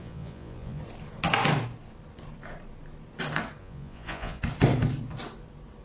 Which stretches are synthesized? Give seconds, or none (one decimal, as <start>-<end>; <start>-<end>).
0.0-0.8; 3.6-4.4